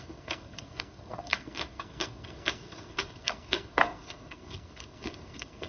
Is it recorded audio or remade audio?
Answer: remade